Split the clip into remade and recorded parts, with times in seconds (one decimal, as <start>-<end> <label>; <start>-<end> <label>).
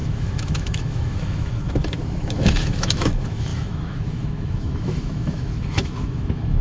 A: 0.0-6.6 remade